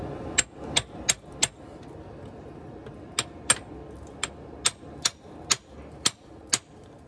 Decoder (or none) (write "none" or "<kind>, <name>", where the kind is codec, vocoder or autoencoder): none